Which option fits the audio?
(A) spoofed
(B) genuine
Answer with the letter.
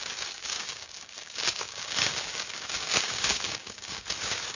A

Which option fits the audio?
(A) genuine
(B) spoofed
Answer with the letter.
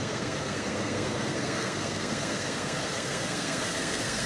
B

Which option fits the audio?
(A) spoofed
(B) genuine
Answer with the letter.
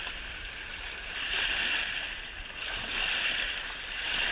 B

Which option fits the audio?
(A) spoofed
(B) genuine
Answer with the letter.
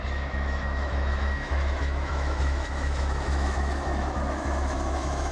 A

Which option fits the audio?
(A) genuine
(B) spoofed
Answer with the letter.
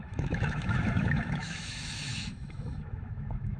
B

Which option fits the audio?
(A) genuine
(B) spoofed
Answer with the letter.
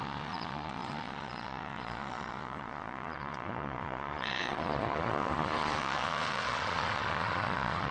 B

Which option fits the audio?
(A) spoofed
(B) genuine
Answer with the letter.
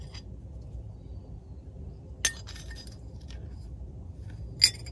B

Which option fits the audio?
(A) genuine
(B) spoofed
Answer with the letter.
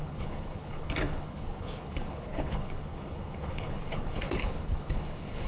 B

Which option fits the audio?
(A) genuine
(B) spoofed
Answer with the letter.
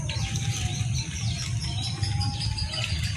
A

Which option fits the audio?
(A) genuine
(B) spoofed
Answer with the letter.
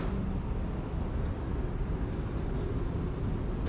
A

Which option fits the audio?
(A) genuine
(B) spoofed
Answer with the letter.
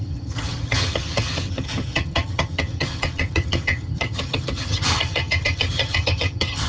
B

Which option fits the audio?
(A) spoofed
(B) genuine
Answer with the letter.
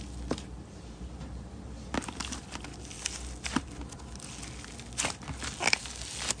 B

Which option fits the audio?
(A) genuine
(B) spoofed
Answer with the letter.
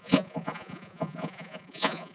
B